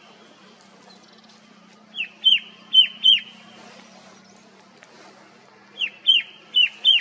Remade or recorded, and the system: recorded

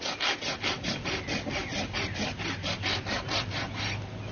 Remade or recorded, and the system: recorded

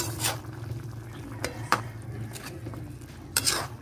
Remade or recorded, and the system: remade, vocoder, BigVGAN v2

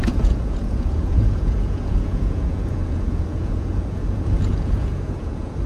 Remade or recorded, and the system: remade, vocoder, Vocos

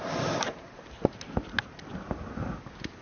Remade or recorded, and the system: recorded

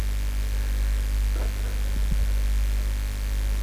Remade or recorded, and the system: recorded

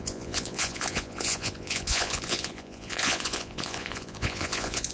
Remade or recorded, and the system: remade, vocoder, Vocos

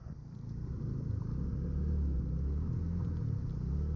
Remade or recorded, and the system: recorded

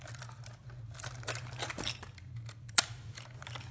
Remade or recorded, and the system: recorded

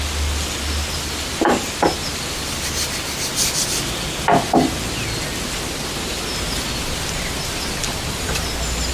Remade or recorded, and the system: recorded